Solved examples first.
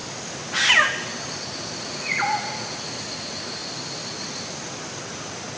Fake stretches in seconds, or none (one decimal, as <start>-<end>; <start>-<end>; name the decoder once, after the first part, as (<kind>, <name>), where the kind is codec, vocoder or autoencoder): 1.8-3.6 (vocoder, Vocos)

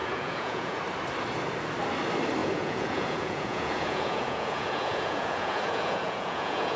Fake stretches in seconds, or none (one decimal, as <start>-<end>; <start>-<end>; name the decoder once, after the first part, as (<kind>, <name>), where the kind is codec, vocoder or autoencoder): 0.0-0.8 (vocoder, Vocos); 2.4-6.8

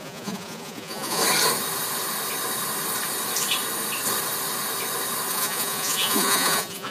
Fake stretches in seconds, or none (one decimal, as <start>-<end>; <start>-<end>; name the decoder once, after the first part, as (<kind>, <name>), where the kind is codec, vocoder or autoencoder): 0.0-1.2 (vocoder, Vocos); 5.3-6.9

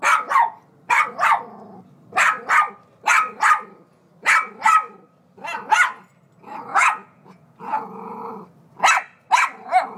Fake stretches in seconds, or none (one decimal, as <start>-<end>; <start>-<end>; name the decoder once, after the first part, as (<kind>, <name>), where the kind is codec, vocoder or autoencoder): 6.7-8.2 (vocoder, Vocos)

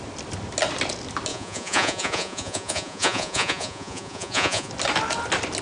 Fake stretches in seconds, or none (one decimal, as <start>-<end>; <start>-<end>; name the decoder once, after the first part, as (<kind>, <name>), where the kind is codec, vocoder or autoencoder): 1.3-4.7 (vocoder, Vocos)

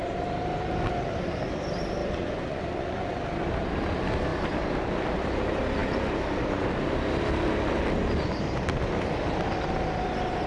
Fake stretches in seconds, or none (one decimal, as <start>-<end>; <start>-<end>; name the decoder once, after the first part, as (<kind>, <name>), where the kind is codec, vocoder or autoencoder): 2.0-3.2 (vocoder, Vocos)

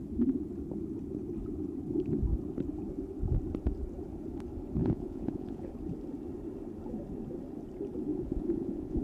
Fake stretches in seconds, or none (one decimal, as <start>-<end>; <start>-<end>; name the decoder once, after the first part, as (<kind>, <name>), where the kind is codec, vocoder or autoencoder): 4.8-5.7 (vocoder, Vocos); 8.1-9.0

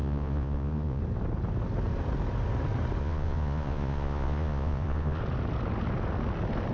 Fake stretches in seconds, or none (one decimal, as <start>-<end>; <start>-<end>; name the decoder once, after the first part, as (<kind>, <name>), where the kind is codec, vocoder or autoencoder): 0.0-1.0 (vocoder, Vocos); 3.0-5.2